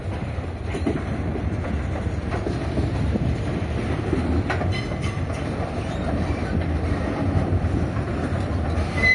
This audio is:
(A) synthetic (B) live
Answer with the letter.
A